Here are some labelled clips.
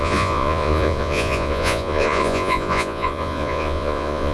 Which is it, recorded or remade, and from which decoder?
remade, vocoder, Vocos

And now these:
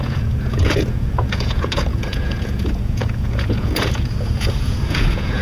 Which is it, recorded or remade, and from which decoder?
remade, vocoder, Vocos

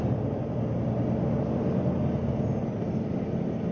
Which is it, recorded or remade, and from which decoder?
recorded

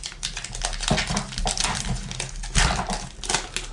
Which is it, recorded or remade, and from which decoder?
recorded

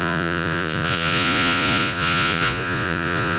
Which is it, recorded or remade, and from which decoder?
remade, vocoder, Vocos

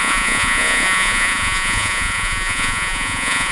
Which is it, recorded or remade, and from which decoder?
remade, vocoder, Vocos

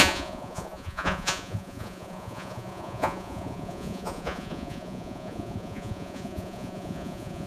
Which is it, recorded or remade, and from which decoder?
remade, vocoder, Vocos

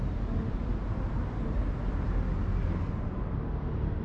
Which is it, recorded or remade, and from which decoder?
recorded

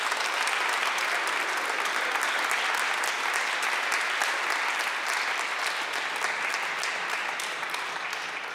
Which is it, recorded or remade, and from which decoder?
recorded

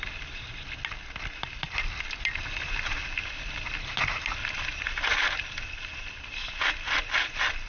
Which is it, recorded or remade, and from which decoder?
recorded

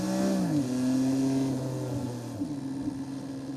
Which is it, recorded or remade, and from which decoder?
recorded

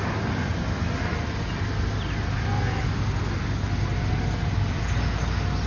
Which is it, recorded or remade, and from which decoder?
recorded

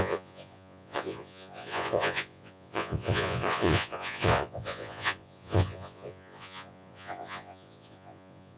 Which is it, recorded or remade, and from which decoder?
remade, vocoder, Vocos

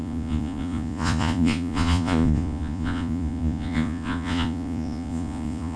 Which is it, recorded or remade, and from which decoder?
remade, vocoder, Vocos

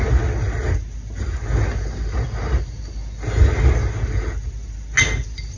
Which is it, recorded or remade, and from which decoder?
recorded